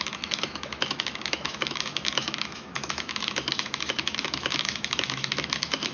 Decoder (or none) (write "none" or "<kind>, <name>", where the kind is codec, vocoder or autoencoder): autoencoder, DAC-VAE